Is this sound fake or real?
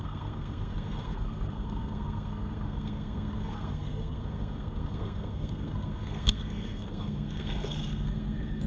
fake